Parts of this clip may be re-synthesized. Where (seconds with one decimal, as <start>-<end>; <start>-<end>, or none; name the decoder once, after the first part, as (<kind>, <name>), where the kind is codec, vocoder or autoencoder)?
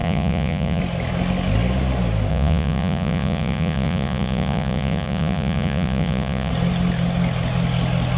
0.0-0.8 (vocoder, Vocos); 2.3-6.5